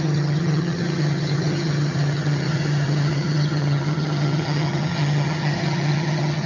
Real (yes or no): no